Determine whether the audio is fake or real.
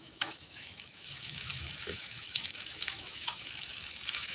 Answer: fake